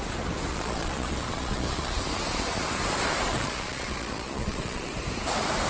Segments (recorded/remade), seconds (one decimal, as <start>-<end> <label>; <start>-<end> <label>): 0.0-0.5 recorded; 0.5-2.0 remade; 2.0-3.3 recorded; 3.3-4.9 remade; 4.9-5.7 recorded